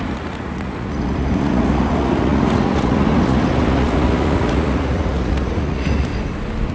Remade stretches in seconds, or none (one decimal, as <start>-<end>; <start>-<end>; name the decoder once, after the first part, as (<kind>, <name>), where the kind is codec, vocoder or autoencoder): 0.0-6.1 (vocoder, Vocos)